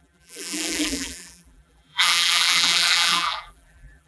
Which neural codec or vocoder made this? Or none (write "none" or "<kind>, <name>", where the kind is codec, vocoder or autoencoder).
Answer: vocoder, BigVGAN v2